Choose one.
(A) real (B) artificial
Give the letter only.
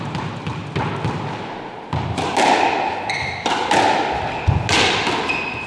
A